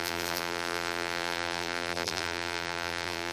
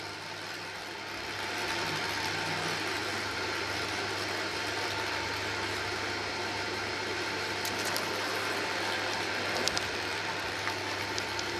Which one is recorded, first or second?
second